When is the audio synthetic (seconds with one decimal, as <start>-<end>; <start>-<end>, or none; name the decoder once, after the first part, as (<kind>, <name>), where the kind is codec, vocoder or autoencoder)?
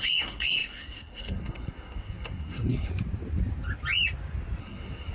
0.0-2.9 (codec, SNAC); 4.6-5.1